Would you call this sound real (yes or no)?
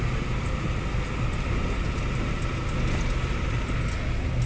yes